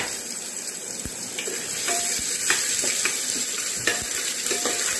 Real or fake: fake